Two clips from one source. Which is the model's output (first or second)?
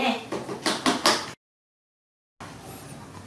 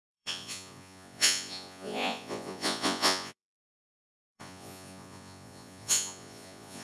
second